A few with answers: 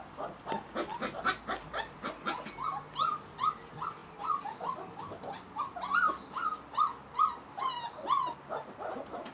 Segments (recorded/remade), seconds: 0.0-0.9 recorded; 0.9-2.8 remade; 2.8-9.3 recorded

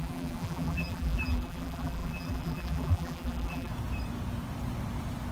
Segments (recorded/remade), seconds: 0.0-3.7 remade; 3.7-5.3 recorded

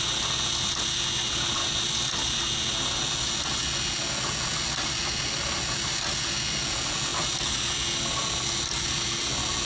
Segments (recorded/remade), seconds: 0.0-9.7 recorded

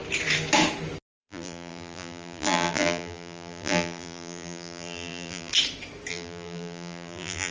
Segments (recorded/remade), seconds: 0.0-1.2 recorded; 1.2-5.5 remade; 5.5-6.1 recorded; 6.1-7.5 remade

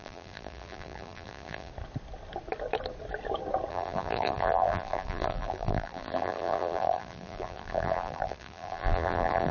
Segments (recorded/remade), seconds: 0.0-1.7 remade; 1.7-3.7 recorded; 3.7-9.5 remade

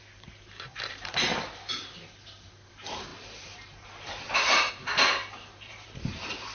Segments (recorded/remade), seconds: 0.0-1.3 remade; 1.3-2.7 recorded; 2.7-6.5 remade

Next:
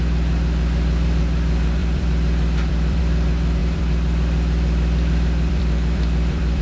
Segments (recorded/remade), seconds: 0.0-1.8 recorded; 1.8-3.0 remade; 3.0-3.6 recorded; 3.6-6.6 remade

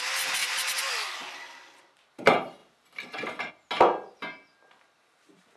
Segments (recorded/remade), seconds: 0.0-0.4 recorded; 0.4-1.8 remade; 1.8-2.6 recorded; 2.6-3.5 remade; 3.5-5.6 recorded